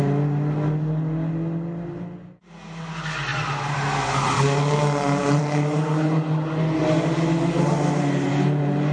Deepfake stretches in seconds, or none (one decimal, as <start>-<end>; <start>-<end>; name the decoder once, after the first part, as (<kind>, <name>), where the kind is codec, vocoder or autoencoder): none